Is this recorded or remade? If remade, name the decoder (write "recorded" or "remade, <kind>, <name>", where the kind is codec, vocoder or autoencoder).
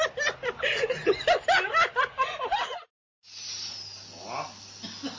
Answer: recorded